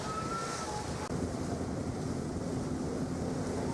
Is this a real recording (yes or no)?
yes